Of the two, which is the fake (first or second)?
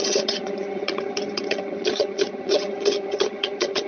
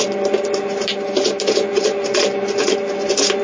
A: first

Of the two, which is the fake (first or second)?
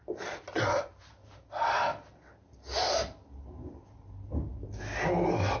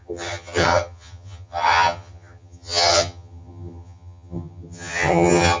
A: second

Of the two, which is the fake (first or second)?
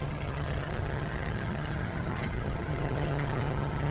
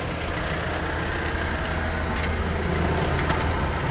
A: first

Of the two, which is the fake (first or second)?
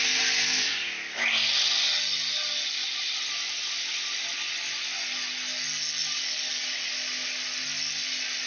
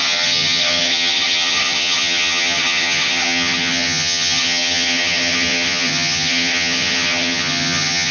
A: second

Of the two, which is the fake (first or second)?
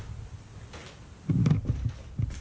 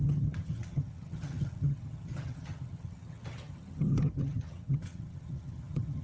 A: second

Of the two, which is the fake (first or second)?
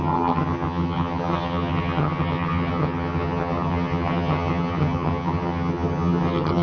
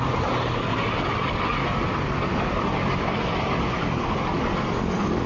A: first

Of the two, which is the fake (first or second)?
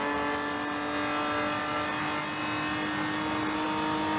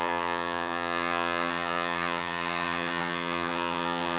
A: second